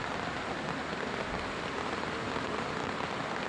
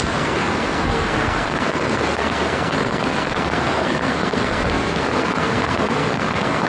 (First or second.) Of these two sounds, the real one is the first